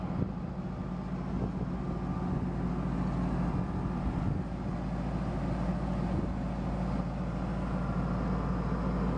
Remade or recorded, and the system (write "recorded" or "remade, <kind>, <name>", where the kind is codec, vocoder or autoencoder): recorded